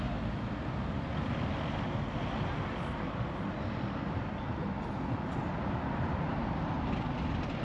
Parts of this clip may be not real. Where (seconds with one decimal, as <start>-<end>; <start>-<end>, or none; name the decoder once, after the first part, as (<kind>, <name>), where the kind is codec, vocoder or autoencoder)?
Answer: 4.4-6.2 (vocoder, BigVGAN v2)